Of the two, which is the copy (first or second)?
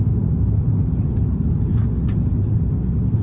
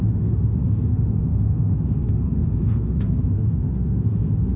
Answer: second